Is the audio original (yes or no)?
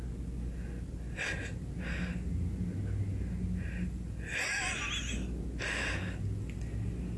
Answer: yes